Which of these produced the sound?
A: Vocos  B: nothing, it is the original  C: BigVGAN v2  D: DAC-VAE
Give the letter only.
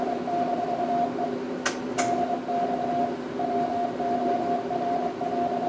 B